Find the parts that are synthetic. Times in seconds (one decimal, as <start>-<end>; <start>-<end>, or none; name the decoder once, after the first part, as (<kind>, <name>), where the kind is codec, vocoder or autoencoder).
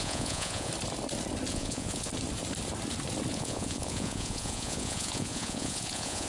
0.0-0.7 (vocoder, Vocos); 1.5-2.1; 3.3-6.3